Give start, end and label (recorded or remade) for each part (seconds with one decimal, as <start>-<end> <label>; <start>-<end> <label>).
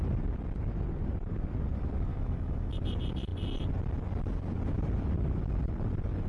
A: 0.0-2.1 recorded; 2.1-2.7 remade; 2.7-6.3 recorded